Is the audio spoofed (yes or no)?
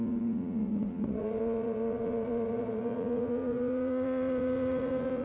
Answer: yes